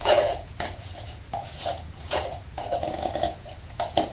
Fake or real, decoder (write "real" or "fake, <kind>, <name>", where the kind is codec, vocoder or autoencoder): fake, vocoder, Vocos